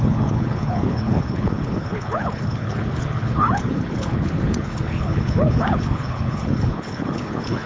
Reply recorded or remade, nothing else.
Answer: remade